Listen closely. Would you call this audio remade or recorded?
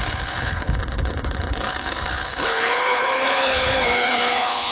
remade